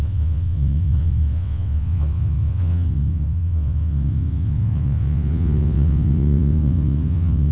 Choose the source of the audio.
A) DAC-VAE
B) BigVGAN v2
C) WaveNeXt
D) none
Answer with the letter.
C